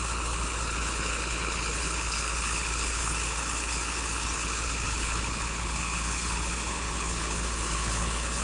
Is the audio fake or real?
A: fake